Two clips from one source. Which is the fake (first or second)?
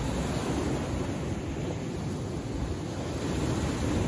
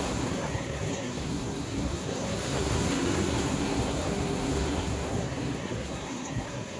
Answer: second